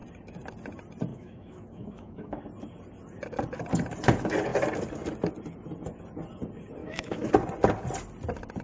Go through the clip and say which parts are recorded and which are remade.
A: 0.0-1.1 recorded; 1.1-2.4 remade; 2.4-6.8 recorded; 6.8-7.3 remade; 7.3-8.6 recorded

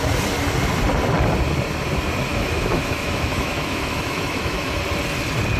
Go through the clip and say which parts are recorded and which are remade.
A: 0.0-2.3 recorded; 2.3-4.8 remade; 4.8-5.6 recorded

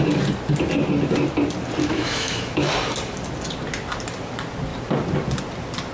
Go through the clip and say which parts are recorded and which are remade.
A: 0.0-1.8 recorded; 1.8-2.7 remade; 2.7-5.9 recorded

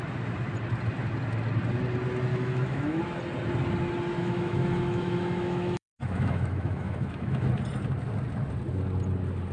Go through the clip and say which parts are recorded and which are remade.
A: 0.0-2.3 recorded; 2.3-3.0 remade; 3.0-4.2 recorded; 4.2-7.5 remade; 7.5-9.5 recorded

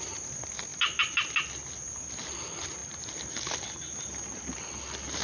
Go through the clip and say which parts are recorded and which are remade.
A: 0.0-5.2 recorded

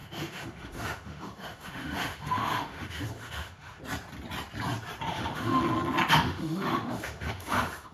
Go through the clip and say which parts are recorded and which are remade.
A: 0.0-3.8 remade; 3.8-5.1 recorded; 5.1-5.6 remade; 5.6-6.1 recorded; 6.1-7.9 remade